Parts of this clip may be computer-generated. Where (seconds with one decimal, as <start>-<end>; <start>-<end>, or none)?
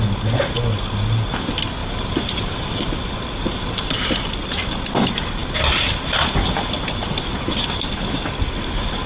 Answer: 1.8-2.8